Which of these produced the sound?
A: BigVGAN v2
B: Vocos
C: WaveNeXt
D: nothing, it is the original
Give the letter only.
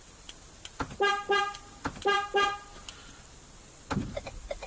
D